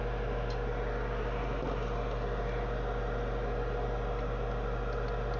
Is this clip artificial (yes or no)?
no